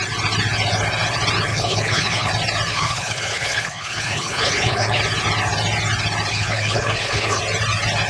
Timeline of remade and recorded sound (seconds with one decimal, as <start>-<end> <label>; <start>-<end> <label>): 0.0-1.5 recorded; 1.5-2.3 remade; 2.3-2.7 recorded; 2.7-5.0 remade; 5.0-6.3 recorded; 6.3-7.4 remade; 7.4-8.1 recorded